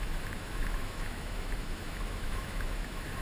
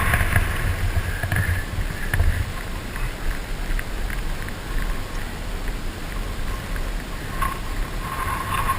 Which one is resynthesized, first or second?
first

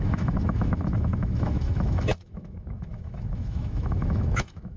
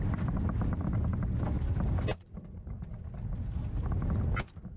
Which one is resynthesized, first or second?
first